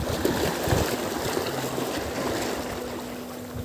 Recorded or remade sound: recorded